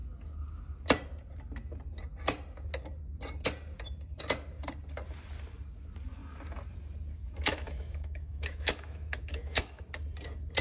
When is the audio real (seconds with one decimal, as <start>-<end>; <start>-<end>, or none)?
0.0-7.2; 9.8-10.6